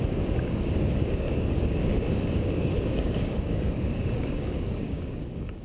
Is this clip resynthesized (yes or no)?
yes